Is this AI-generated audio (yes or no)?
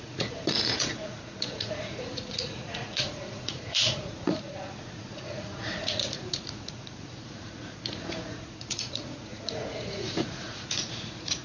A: yes